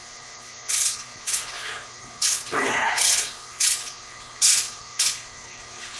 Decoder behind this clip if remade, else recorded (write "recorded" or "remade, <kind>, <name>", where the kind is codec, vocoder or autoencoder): remade, codec, HILCodec